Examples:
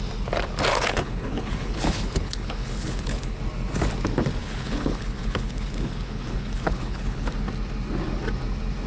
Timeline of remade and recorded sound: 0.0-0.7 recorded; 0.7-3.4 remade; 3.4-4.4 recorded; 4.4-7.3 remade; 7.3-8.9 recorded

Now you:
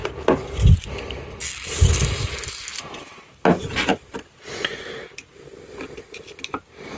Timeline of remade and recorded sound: 0.0-7.0 recorded

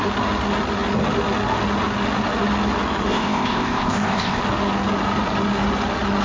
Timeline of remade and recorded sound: 0.0-3.1 recorded; 3.1-4.4 remade; 4.4-6.2 recorded

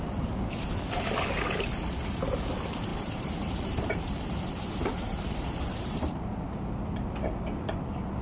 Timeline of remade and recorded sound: 0.0-2.9 recorded; 2.9-6.5 remade; 6.5-8.2 recorded

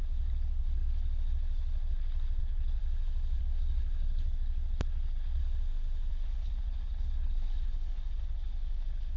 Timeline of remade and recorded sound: 0.0-2.8 remade; 2.8-3.4 recorded; 3.4-5.4 remade; 5.4-6.1 recorded; 6.1-9.2 remade

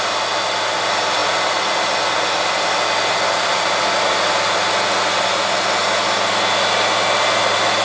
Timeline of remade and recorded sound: 0.0-7.8 recorded

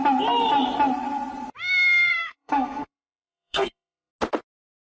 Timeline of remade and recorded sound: 0.0-2.1 recorded; 2.1-4.1 remade; 4.1-5.0 recorded